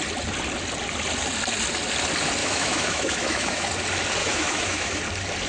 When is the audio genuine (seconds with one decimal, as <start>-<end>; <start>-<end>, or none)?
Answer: 0.0-2.4; 3.7-4.2; 5.0-5.5